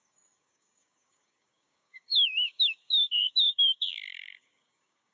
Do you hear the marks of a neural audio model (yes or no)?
yes